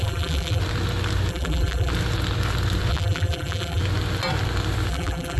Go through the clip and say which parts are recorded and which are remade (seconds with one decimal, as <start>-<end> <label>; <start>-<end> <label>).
0.0-0.6 remade; 0.6-1.3 recorded; 1.3-1.9 remade; 1.9-2.9 recorded; 2.9-3.8 remade; 3.8-4.9 recorded; 4.9-5.4 remade